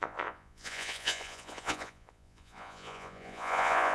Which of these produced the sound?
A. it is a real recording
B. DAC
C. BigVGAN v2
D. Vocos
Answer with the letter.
D